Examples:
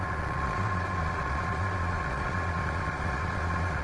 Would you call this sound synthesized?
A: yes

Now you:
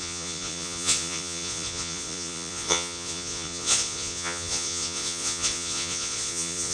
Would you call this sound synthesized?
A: yes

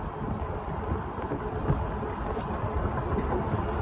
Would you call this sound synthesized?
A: no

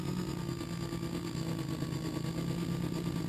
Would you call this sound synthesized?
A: no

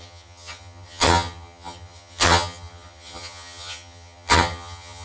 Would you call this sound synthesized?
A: yes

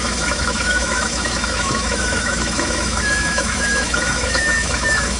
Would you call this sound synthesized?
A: yes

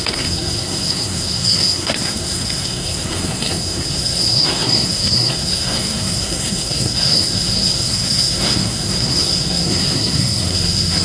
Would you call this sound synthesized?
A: yes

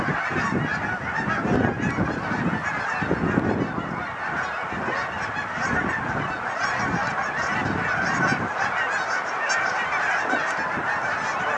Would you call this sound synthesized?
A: no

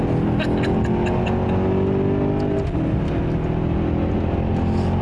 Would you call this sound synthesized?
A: no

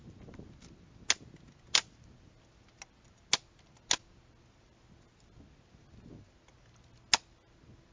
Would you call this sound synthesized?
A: no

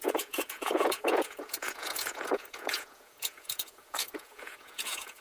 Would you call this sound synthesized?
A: yes